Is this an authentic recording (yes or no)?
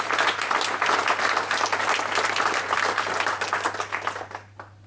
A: yes